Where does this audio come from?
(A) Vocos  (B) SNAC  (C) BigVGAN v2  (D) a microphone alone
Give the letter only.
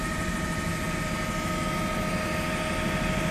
D